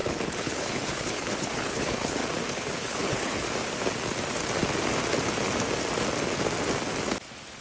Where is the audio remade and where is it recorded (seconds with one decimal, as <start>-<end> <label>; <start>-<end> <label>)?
0.0-2.2 remade; 2.2-2.7 recorded; 2.7-3.3 remade; 3.3-7.6 recorded

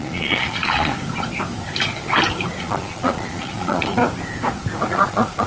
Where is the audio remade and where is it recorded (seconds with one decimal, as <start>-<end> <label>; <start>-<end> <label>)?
0.0-0.9 remade; 0.9-2.6 recorded; 2.6-4.0 remade; 4.0-4.9 recorded; 4.9-5.5 remade

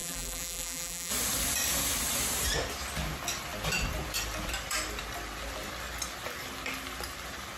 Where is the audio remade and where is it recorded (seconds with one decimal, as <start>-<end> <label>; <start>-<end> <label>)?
0.0-1.1 remade; 1.1-7.6 recorded

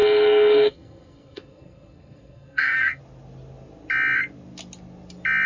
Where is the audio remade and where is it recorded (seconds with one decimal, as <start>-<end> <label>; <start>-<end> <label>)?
0.0-3.0 remade; 3.0-5.5 recorded

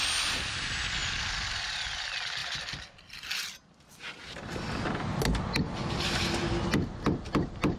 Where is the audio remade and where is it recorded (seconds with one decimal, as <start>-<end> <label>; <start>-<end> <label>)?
0.0-2.4 recorded; 2.4-3.3 remade; 3.3-7.8 recorded

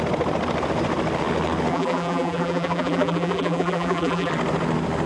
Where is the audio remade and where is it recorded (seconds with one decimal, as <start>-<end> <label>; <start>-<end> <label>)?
0.0-1.7 recorded; 1.7-4.3 remade; 4.3-5.1 recorded

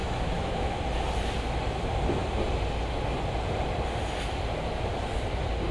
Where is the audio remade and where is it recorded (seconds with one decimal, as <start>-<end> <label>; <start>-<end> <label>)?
0.0-0.8 remade; 0.8-5.7 recorded

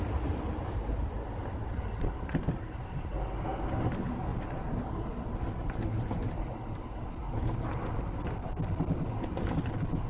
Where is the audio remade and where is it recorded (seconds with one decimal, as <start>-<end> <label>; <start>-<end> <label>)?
0.0-10.1 recorded